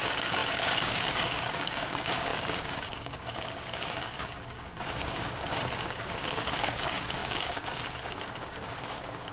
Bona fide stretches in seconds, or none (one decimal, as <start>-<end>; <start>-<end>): none